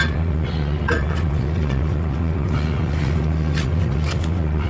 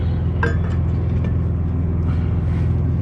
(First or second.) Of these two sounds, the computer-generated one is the first